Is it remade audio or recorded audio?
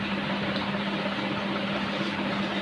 recorded